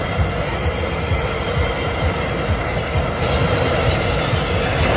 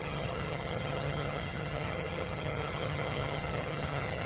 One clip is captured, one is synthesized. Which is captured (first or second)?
first